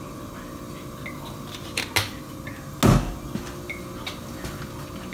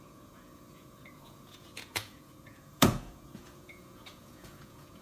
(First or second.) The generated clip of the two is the second